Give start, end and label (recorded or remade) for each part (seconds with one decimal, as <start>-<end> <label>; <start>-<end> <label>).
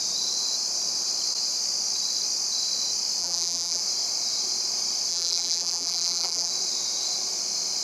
0.0-3.2 recorded; 3.2-3.8 remade; 3.8-5.1 recorded; 5.1-6.5 remade; 6.5-7.8 recorded